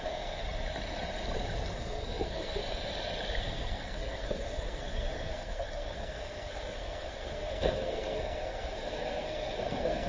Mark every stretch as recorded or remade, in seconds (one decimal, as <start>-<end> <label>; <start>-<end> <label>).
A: 0.0-0.4 remade; 0.4-1.8 recorded; 1.8-2.6 remade; 2.6-3.4 recorded; 3.4-10.1 remade